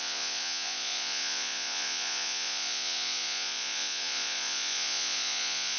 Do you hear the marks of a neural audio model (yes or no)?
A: yes